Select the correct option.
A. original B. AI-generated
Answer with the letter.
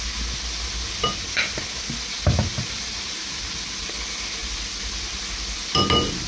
A